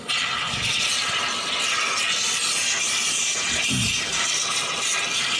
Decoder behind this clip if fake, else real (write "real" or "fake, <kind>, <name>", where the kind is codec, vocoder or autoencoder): real